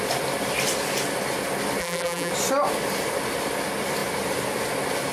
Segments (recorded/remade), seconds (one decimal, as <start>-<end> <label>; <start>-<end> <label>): 0.0-1.8 recorded; 1.8-2.3 remade; 2.3-5.1 recorded